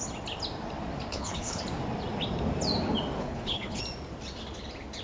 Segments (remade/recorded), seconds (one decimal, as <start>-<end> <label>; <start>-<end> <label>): 0.0-1.1 recorded; 1.1-1.6 remade; 1.6-3.2 recorded; 3.2-3.8 remade; 3.8-5.0 recorded